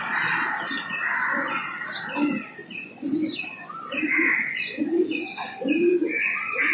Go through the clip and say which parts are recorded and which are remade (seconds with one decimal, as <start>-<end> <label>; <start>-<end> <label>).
0.0-1.2 recorded; 1.2-1.8 remade; 1.8-2.6 recorded; 2.6-6.7 remade